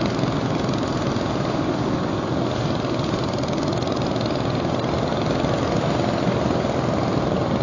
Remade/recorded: recorded